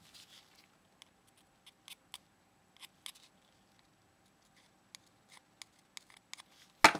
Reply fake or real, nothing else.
real